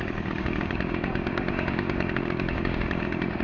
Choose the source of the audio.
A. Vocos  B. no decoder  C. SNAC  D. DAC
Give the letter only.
D